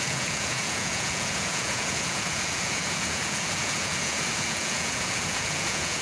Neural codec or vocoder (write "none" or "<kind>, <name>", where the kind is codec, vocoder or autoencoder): vocoder, Vocos